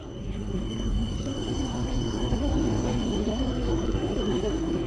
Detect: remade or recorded remade